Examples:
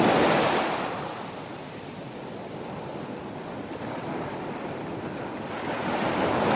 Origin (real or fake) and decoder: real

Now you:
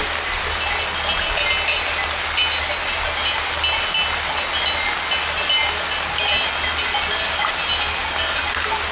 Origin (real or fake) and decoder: real